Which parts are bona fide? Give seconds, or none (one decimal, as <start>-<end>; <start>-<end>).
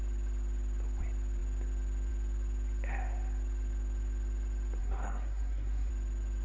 0.0-4.8; 5.9-6.4